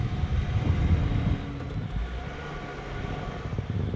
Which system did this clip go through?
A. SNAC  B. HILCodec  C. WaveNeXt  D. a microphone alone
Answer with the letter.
D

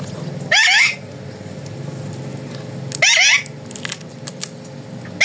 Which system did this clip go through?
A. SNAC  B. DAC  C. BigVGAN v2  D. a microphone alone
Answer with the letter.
D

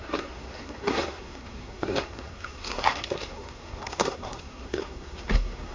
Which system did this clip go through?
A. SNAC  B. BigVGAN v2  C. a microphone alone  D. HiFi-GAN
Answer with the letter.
A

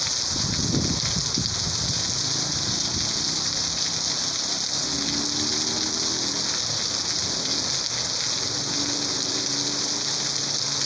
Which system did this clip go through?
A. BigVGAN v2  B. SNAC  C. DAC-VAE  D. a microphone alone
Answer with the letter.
D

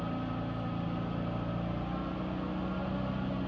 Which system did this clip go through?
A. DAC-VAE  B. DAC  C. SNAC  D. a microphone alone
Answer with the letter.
D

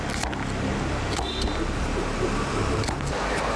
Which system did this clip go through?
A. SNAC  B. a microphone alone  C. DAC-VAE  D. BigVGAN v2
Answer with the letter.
B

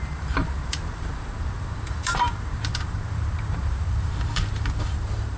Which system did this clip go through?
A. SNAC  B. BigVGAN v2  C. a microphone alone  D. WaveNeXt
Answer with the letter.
B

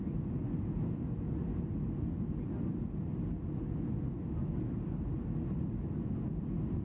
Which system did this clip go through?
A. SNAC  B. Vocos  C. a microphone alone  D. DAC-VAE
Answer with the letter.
C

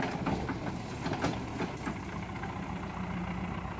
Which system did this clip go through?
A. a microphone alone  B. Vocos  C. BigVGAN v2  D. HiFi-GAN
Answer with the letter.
A